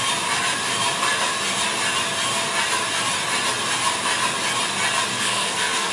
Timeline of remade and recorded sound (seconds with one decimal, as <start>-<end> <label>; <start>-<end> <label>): 0.0-5.1 recorded; 5.1-5.9 remade